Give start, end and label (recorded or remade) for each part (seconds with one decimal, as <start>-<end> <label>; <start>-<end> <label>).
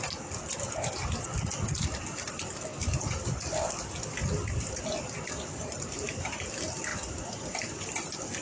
0.0-2.7 recorded; 2.7-4.7 remade; 4.7-6.9 recorded; 6.9-7.4 remade; 7.4-8.4 recorded